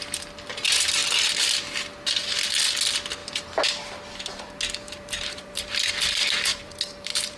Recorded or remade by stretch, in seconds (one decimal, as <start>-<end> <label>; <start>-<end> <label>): 0.0-4.8 recorded; 4.8-5.7 remade; 5.7-6.5 recorded; 6.5-7.4 remade